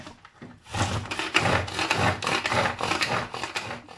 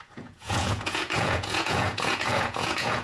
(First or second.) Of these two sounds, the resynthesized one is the second